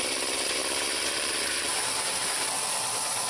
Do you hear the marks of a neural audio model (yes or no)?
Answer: no